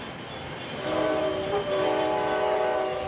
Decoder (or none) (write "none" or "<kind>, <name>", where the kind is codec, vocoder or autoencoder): none